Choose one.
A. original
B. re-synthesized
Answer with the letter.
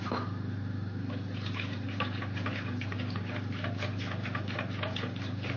A